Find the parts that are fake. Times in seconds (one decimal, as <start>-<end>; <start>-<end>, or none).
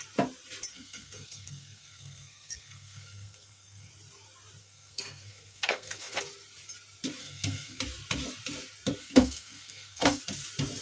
0.7-3.9; 4.6-6.2; 7.2-7.8; 9.0-10.2